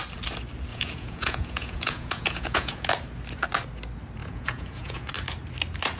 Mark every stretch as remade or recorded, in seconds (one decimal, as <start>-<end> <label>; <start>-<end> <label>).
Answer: 0.0-0.7 recorded; 0.7-2.9 remade; 2.9-4.2 recorded; 4.2-5.1 remade; 5.1-6.0 recorded